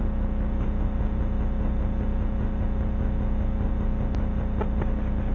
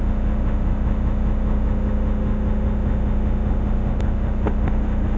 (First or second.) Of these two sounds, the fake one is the second